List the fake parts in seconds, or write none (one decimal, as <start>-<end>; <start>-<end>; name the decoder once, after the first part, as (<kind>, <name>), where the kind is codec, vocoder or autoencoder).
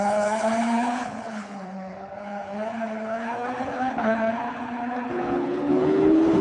0.0-6.4 (codec, HILCodec)